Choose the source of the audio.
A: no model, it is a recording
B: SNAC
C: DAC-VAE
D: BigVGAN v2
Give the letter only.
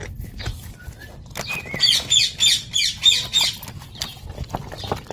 A